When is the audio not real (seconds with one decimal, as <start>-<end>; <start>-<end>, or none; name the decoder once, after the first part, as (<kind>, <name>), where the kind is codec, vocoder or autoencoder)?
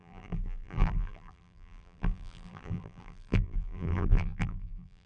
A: 0.0-5.1 (vocoder, BigVGAN v2)